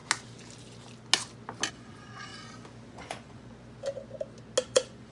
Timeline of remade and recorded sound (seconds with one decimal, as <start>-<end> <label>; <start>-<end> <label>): 0.0-1.7 recorded; 1.7-2.3 remade; 2.3-2.9 recorded; 2.9-3.5 remade; 3.5-4.6 recorded; 4.6-5.1 remade